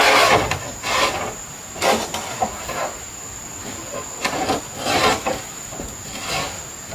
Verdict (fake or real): real